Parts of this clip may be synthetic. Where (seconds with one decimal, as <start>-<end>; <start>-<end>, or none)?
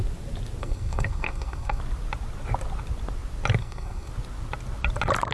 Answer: 0.6-1.8; 3.6-4.1